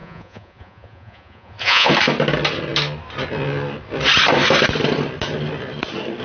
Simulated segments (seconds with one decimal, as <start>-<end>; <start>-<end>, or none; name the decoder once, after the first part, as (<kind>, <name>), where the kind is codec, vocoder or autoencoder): 0.0-1.9 (vocoder, Vocos)